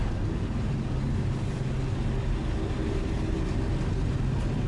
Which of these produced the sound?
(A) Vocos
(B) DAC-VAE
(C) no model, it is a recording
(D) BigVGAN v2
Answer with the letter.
C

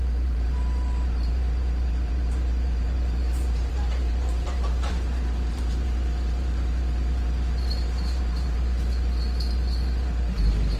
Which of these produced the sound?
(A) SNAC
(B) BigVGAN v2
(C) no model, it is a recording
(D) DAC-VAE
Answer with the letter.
B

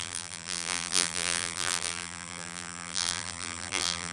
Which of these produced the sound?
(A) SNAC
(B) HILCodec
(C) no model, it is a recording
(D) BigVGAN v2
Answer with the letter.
D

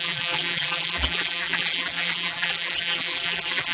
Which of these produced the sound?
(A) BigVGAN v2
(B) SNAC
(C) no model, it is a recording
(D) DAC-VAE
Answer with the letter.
A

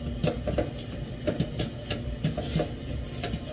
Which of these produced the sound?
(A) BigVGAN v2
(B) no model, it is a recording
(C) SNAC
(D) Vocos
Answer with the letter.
B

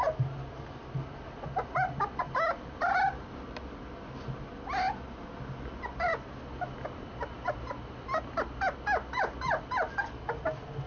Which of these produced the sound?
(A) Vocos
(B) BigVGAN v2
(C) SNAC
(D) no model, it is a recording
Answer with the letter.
D